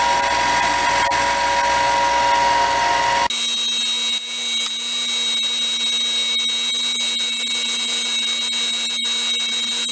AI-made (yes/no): no